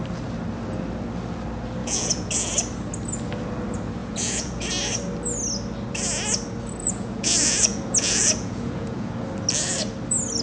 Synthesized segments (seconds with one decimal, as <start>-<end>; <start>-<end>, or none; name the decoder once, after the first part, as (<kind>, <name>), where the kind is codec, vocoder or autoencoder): 1.8-2.3 (vocoder, Vocos); 4.0-4.7; 6.8-9.1